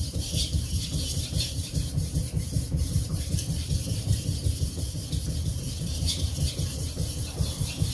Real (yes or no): no